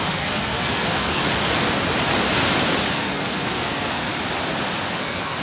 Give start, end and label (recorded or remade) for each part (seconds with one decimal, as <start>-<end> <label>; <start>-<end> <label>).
0.0-1.2 remade; 1.2-2.9 recorded; 2.9-4.1 remade; 4.1-4.9 recorded; 4.9-5.4 remade